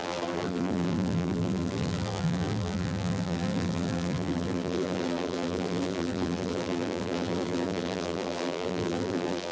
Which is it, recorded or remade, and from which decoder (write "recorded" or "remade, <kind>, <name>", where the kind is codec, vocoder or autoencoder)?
remade, vocoder, BigVGAN v2